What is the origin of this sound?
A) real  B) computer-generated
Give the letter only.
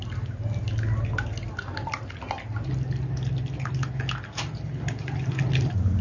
A